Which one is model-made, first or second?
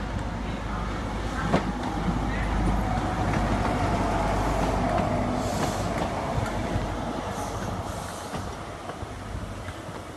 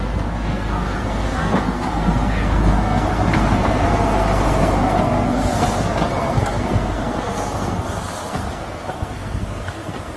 second